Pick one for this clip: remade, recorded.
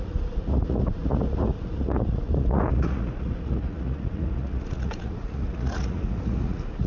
remade